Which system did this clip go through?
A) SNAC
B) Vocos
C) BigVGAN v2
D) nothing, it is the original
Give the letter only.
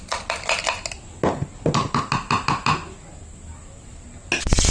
D